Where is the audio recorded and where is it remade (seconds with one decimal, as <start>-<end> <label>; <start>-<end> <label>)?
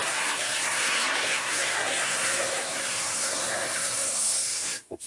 0.0-5.1 remade